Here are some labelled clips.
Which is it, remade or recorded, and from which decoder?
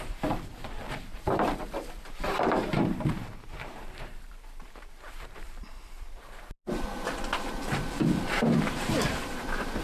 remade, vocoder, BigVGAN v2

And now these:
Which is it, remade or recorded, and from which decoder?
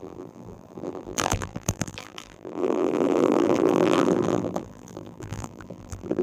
remade, vocoder, BigVGAN v2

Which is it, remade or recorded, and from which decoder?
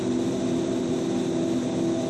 recorded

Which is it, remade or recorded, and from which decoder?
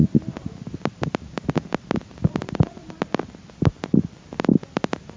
recorded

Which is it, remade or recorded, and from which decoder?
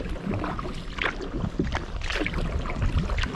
recorded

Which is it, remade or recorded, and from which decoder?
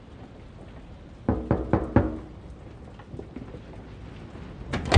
recorded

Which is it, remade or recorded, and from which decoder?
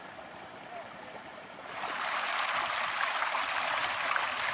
recorded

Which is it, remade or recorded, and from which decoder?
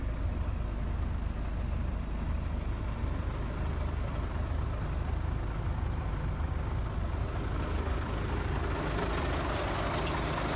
recorded